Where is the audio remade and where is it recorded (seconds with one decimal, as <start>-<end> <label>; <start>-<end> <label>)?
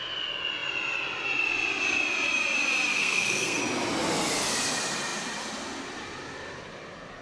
0.0-2.9 recorded; 2.9-3.6 remade; 3.6-7.2 recorded